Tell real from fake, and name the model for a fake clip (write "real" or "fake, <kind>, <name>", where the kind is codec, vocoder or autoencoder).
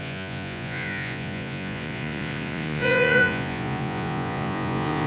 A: fake, vocoder, Vocos